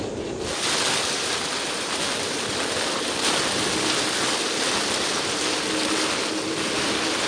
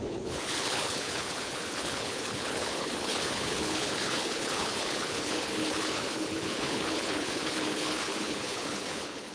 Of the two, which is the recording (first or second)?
first